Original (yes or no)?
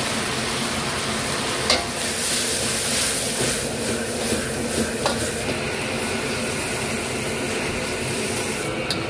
yes